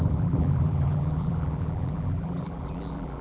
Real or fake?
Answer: fake